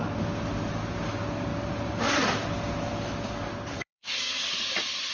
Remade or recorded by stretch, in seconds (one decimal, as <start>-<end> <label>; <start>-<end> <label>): 0.0-3.7 recorded; 3.7-4.5 remade; 4.5-5.1 recorded